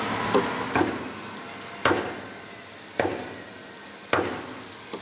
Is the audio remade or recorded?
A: recorded